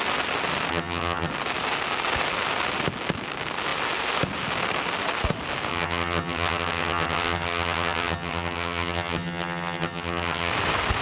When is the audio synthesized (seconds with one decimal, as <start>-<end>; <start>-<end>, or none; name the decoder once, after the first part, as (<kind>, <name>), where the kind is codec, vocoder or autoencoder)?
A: 0.7-1.3 (vocoder, HiFi-GAN); 5.7-10.5